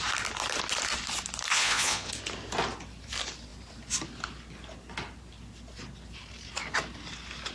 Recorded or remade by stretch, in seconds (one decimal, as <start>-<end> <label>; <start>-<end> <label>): 0.0-1.5 recorded; 1.5-2.1 remade; 2.1-7.5 recorded

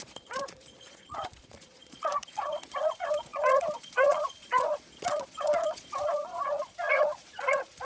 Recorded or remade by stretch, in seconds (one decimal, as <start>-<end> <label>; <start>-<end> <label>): 0.0-7.8 remade

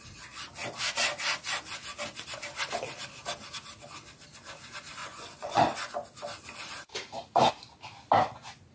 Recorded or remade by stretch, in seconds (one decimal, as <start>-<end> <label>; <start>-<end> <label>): 0.0-5.0 recorded; 5.0-5.9 remade; 5.9-8.7 recorded